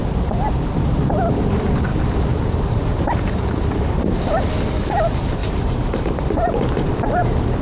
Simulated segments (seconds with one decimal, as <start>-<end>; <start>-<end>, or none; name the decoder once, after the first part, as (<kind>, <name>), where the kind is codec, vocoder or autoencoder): 1.9-4.3 (vocoder, BigVGAN v2); 5.4-6.1